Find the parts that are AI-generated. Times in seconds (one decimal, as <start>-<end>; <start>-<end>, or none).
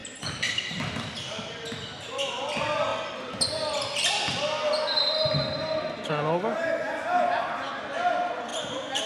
8.5-9.1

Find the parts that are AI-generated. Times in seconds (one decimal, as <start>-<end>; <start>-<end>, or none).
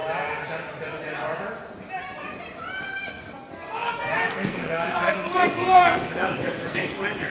3.1-7.3